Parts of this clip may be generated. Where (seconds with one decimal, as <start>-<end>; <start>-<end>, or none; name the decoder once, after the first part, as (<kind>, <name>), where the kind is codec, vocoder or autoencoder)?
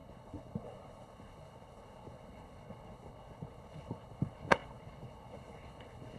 0.0-6.2 (codec, HILCodec)